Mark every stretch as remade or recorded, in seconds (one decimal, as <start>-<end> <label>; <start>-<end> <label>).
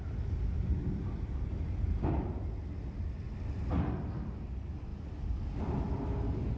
0.0-6.6 recorded